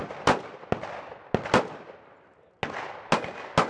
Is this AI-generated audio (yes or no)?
no